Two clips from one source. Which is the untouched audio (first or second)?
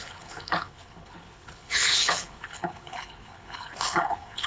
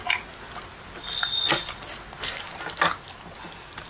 second